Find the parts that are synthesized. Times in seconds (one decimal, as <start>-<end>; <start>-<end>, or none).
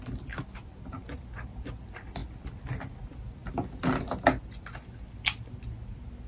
none